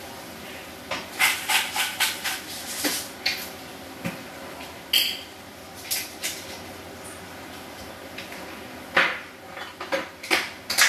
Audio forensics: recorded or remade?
recorded